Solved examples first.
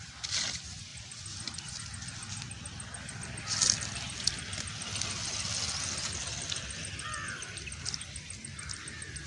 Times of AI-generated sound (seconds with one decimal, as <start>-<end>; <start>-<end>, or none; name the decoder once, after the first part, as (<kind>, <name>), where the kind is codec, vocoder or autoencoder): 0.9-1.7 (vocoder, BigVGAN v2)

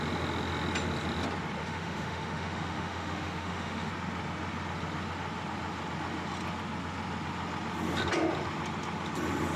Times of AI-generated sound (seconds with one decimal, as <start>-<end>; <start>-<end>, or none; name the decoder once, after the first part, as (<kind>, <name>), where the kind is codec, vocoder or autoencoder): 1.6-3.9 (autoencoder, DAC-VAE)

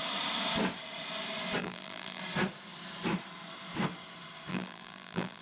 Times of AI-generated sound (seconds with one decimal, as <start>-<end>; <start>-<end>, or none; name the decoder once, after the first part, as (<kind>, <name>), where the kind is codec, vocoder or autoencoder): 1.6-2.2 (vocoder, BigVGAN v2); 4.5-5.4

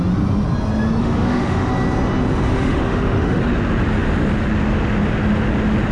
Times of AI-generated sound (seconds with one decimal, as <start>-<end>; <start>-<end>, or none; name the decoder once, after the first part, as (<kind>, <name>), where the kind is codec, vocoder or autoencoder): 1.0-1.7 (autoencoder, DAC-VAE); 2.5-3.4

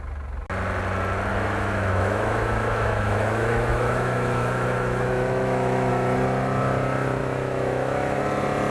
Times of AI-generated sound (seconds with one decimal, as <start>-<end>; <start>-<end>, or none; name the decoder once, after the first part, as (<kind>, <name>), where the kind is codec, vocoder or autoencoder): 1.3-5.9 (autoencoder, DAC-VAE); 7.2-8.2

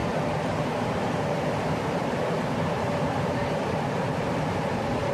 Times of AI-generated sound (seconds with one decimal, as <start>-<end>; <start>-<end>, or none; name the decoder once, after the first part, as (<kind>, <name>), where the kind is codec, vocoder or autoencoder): 0.0-5.1 (vocoder, BigVGAN v2)

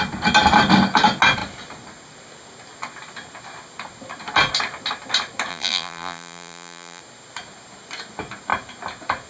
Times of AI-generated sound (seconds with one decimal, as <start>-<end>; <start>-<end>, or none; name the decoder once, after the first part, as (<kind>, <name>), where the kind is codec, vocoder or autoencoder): 5.5-7.0 (vocoder, BigVGAN v2)

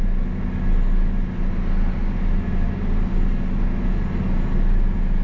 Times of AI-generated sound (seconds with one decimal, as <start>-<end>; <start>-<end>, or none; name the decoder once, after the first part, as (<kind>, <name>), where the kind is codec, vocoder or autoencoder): none